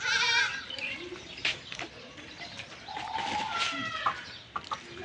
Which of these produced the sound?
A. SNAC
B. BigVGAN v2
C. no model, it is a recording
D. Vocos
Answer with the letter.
C